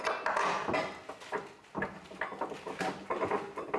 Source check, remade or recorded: recorded